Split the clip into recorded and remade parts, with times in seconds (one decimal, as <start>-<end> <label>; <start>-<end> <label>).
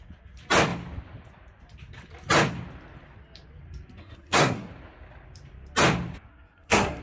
0.0-4.0 recorded; 4.0-4.7 remade; 4.7-6.3 recorded; 6.3-7.0 remade